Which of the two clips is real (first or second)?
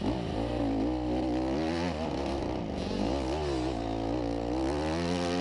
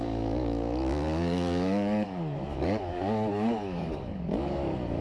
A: first